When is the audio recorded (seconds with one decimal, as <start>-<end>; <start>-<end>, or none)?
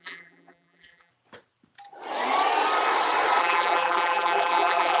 1.1-3.4